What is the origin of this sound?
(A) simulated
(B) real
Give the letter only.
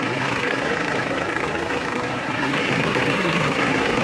A